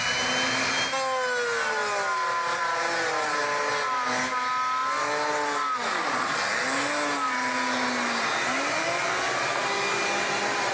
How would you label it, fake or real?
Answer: real